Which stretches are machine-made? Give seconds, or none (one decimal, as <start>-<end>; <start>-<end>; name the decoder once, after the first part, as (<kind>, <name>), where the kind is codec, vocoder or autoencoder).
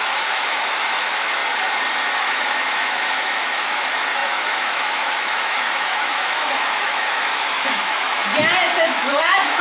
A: 0.0-1.4 (autoencoder, DAC-VAE); 2.1-8.2; 8.8-9.6